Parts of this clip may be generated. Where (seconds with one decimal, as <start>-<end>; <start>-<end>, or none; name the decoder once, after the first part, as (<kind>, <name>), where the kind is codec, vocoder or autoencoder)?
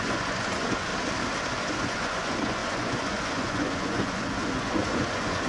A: 0.0-0.9 (vocoder, Vocos); 1.4-5.5